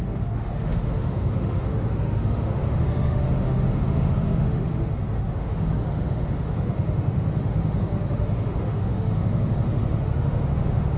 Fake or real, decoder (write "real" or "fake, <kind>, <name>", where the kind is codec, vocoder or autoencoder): fake, autoencoder, DAC-VAE